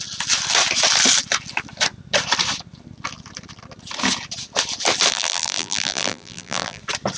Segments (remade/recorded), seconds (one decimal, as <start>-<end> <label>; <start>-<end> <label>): 0.0-5.1 recorded; 5.1-6.8 remade; 6.8-7.2 recorded